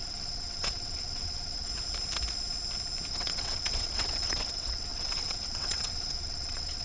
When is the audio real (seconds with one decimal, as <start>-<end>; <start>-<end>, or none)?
1.7-3.1